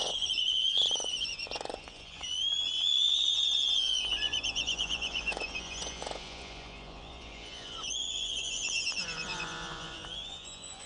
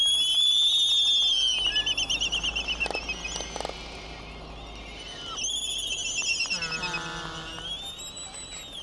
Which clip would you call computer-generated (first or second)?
first